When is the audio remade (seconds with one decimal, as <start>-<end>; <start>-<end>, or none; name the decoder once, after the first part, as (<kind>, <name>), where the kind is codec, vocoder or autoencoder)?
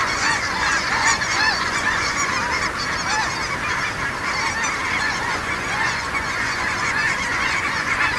0.0-2.3 (vocoder, Vocos); 4.9-8.2